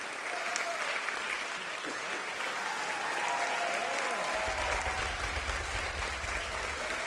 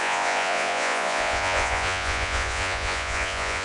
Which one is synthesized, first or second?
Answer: second